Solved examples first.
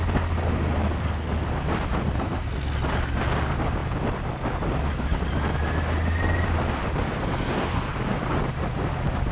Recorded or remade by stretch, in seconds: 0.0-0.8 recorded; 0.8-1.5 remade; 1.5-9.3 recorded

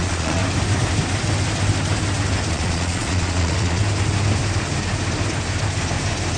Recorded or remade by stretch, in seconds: 0.0-0.4 remade; 0.4-2.5 recorded; 2.5-3.8 remade; 3.8-6.4 recorded